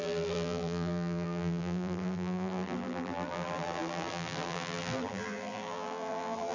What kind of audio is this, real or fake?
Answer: fake